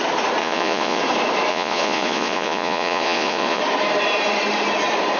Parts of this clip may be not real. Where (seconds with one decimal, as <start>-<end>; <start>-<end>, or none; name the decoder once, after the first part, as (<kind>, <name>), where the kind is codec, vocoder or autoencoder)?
0.4-1.0 (vocoder, Vocos); 1.5-3.6